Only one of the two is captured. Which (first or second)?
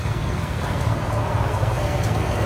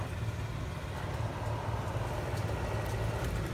second